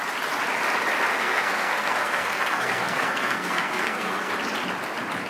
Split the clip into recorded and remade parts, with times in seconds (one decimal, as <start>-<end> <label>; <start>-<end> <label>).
0.0-1.1 recorded; 1.1-4.3 remade; 4.3-5.3 recorded